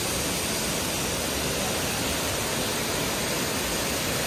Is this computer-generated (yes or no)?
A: no